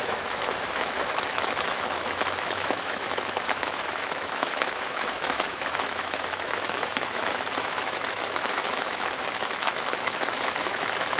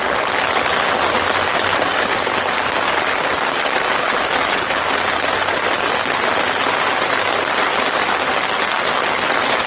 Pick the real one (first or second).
second